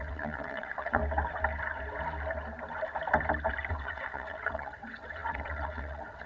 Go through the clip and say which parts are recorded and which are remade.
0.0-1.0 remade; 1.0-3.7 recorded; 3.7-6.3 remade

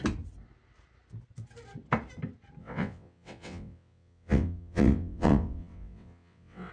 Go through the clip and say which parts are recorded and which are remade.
0.0-2.6 recorded; 2.6-6.7 remade

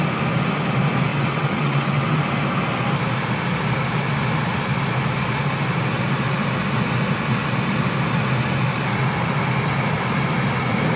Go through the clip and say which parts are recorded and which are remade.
0.0-1.1 recorded; 1.1-2.2 remade; 2.2-11.0 recorded